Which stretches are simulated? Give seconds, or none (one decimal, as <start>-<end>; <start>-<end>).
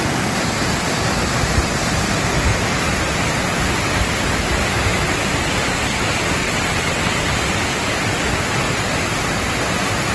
6.4-7.2